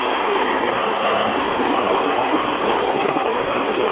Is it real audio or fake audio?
fake